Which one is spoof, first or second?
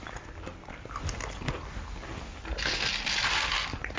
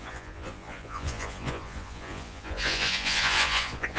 second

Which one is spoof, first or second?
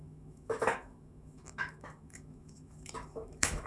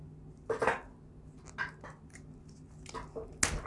first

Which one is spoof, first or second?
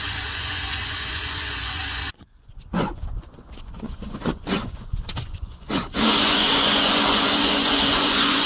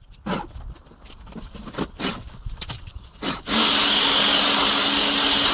first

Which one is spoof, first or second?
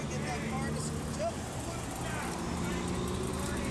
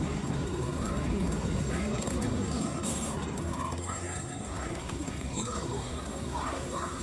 second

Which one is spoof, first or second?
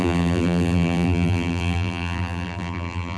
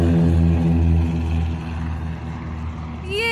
first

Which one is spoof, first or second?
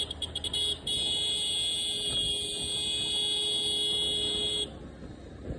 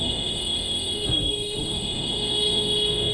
second